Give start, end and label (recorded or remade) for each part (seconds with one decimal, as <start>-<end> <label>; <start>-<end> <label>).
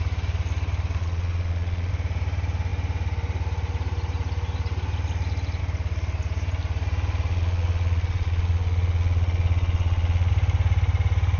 0.0-1.0 recorded; 1.0-1.9 remade; 1.9-7.3 recorded; 7.3-10.3 remade; 10.3-11.4 recorded